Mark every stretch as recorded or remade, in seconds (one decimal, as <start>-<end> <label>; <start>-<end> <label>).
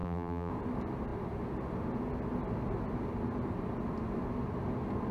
0.0-0.5 remade; 0.5-5.1 recorded